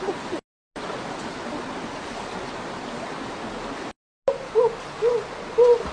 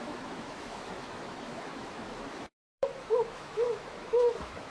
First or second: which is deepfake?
second